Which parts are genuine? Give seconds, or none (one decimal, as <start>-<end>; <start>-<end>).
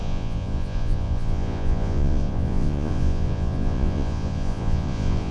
none